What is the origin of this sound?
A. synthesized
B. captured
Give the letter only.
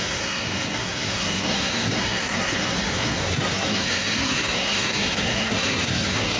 A